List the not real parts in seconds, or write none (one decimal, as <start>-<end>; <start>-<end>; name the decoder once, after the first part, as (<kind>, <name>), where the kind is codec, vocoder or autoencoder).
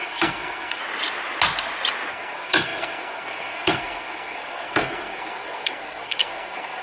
0.0-0.8 (codec, SNAC); 2.1-6.8